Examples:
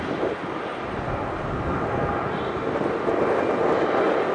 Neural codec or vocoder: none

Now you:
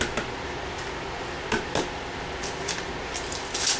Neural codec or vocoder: none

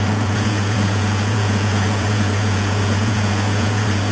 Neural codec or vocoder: vocoder, Vocos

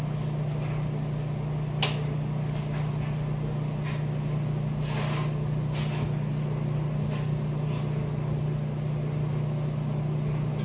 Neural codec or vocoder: none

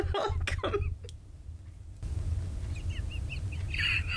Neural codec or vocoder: none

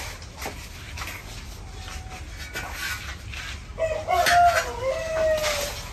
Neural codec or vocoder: none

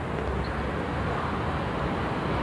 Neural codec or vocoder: none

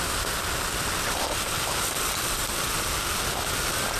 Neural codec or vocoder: none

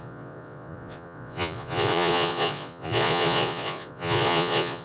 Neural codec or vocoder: vocoder, Vocos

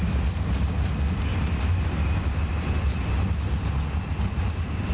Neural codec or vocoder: none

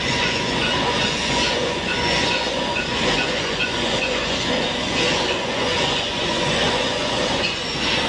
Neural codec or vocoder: vocoder, Vocos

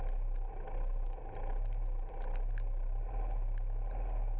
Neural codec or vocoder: none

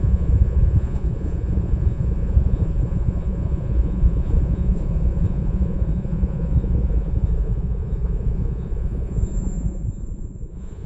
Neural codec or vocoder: vocoder, Vocos